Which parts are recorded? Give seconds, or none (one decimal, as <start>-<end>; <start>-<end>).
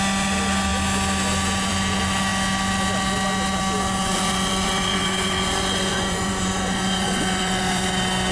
0.0-4.0; 7.9-8.3